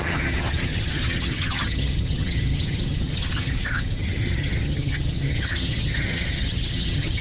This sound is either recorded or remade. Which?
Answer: remade